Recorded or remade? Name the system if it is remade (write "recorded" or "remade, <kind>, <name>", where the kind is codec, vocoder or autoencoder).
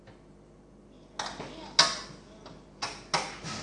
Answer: recorded